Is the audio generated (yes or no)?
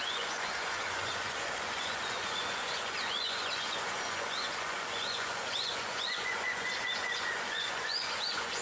yes